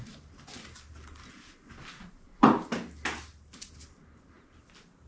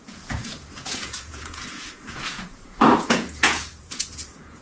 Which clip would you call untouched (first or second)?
first